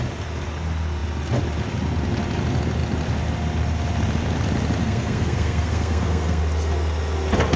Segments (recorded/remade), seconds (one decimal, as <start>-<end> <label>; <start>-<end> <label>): 0.0-4.8 recorded; 4.8-6.4 remade; 6.4-7.6 recorded